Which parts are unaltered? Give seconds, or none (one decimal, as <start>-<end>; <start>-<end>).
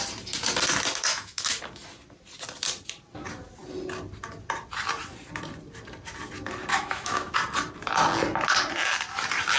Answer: 0.0-1.1; 1.6-6.7; 7.3-9.6